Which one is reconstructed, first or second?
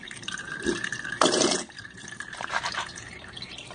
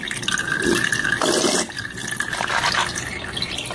first